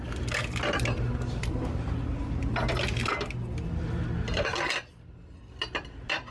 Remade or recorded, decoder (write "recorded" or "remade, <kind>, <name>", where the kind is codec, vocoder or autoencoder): recorded